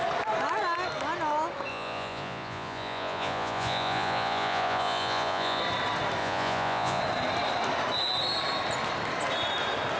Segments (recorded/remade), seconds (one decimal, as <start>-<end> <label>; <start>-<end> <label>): 0.0-1.7 recorded; 1.7-5.6 remade; 5.6-6.2 recorded; 6.2-7.0 remade; 7.0-10.0 recorded

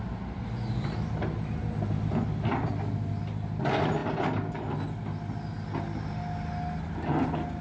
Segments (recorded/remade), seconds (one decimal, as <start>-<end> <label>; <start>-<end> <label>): 0.0-7.6 recorded

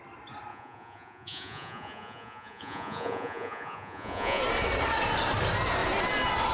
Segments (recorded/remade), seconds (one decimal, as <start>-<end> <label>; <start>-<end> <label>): 0.0-0.5 recorded; 0.5-4.4 remade; 4.4-6.5 recorded

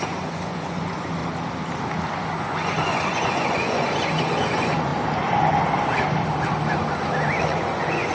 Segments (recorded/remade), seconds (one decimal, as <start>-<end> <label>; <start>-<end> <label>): 0.0-1.2 remade; 1.2-2.1 recorded; 2.1-4.9 remade; 4.9-7.4 recorded; 7.4-8.1 remade

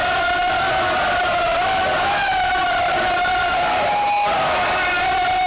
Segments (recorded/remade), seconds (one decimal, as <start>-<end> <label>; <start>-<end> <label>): 0.0-5.5 recorded

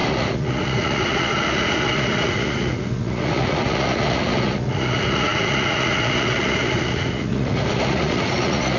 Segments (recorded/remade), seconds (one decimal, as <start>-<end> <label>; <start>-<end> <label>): 0.0-8.8 remade

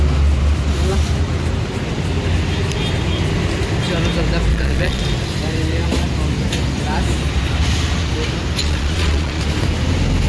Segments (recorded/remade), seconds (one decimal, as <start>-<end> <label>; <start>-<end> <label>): 0.0-4.5 recorded; 4.5-5.0 remade; 5.0-8.6 recorded; 8.6-9.4 remade; 9.4-10.3 recorded